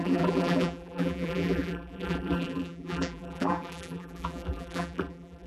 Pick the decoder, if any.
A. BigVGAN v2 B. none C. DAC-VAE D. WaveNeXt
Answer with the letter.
A